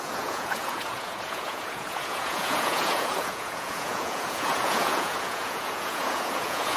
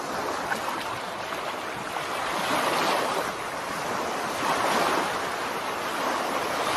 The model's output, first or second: first